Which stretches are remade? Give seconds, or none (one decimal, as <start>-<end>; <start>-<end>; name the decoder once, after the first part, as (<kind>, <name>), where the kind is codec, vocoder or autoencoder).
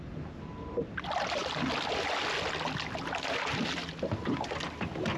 none